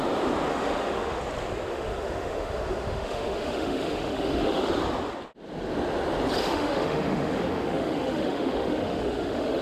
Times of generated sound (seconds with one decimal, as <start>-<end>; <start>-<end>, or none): 0.5-1.2; 1.7-4.7; 6.4-9.6